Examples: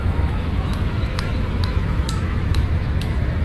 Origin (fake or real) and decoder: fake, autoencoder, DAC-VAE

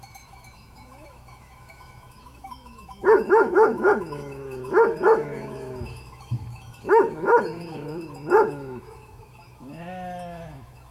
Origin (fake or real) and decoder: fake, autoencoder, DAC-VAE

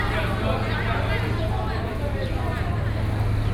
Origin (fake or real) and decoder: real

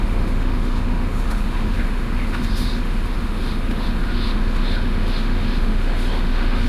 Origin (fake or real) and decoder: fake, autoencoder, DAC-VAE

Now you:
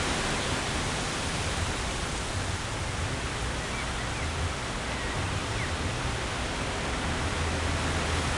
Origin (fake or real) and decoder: real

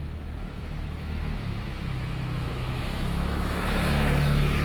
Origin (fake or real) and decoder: fake, autoencoder, DAC-VAE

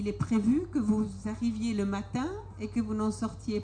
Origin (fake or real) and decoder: real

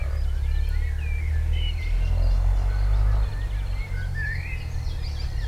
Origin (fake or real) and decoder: real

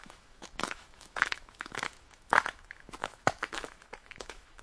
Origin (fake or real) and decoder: fake, autoencoder, DAC-VAE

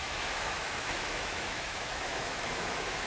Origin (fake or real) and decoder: fake, autoencoder, DAC-VAE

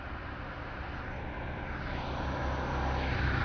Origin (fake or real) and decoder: real